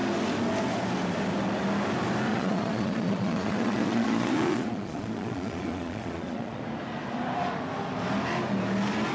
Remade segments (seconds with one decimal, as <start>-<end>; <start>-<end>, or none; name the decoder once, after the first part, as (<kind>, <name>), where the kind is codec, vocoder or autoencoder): 2.3-6.6 (vocoder, Vocos)